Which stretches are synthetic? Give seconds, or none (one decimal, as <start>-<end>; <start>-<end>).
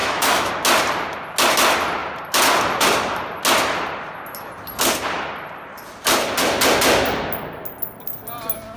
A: 0.0-0.5